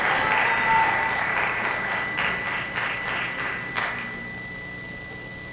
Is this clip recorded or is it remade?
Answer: recorded